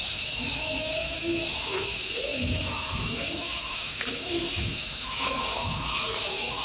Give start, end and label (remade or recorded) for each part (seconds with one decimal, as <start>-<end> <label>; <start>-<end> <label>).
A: 0.0-6.6 remade